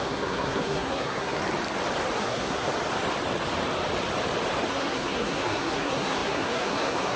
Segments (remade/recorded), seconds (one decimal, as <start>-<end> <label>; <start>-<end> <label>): 0.0-1.4 remade; 1.4-2.2 recorded; 2.2-2.7 remade; 2.7-4.7 recorded; 4.7-7.2 remade